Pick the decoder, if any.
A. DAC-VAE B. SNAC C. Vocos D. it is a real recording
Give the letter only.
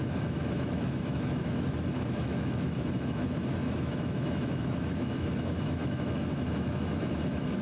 A